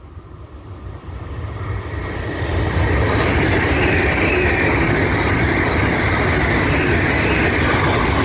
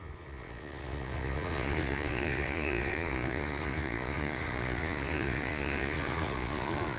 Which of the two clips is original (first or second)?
first